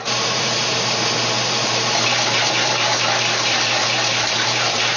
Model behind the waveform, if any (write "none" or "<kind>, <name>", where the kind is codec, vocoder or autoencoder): vocoder, BigVGAN v2